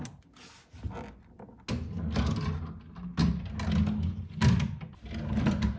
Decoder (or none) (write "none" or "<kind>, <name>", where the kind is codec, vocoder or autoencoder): none